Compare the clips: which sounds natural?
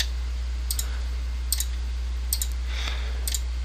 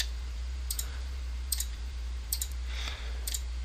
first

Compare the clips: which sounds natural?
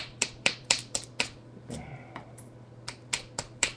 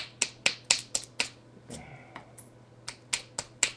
second